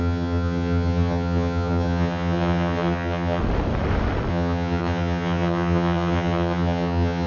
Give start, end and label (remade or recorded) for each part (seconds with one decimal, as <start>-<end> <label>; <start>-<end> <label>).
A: 0.0-3.4 remade; 3.4-4.3 recorded; 4.3-7.3 remade